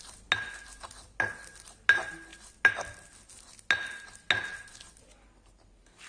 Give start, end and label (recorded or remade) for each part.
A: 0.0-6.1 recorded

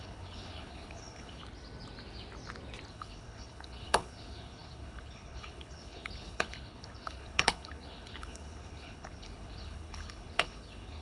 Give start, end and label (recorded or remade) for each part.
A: 0.0-1.4 remade; 1.4-2.9 recorded; 2.9-11.0 remade